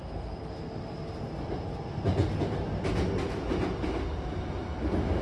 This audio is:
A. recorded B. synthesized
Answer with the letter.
A